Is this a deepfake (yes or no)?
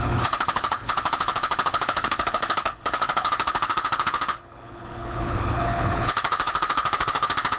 yes